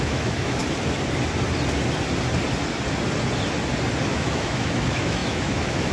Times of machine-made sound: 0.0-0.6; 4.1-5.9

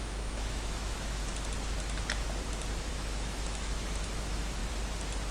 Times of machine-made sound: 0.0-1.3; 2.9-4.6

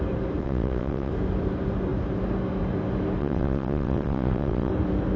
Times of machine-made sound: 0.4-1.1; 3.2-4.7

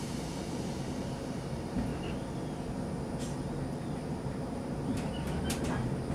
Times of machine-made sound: 0.0-1.9; 5.6-6.1

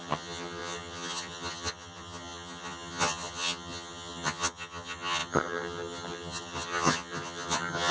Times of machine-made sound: 0.0-7.9